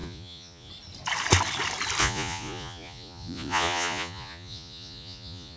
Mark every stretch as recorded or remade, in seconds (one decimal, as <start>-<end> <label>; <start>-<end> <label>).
0.0-0.7 remade; 0.7-2.0 recorded; 2.0-5.6 remade